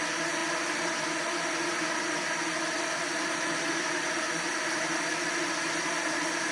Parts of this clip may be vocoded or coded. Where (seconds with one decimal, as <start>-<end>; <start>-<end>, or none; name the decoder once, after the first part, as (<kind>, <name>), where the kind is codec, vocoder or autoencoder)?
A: none